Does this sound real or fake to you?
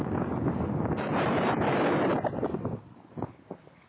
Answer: real